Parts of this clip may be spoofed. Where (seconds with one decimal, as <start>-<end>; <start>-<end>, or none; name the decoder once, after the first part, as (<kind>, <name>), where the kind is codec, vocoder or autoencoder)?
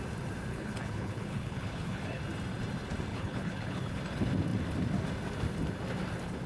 0.5-2.2 (codec, HILCodec); 3.1-4.0